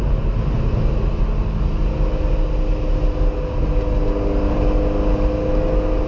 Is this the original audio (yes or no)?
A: yes